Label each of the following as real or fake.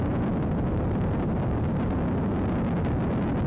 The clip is real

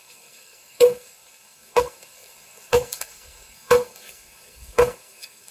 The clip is fake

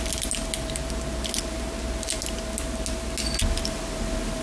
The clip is real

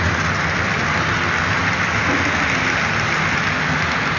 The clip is real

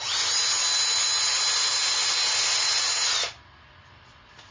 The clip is real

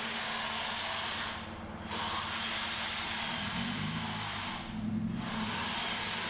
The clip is real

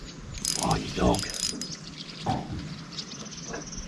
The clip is real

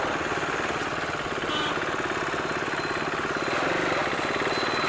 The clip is real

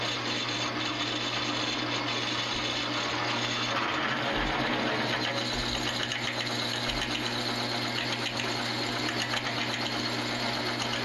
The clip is real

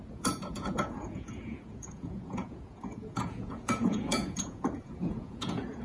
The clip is fake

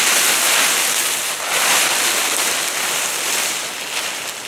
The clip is real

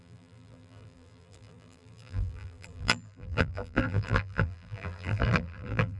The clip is fake